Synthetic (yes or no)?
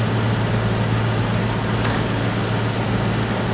no